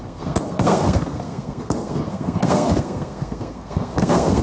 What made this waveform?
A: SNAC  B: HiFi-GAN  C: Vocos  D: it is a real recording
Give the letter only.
A